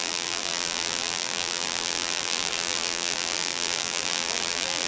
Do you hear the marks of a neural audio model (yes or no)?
yes